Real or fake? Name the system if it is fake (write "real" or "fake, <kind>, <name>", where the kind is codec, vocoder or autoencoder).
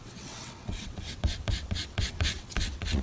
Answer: fake, vocoder, WaveNeXt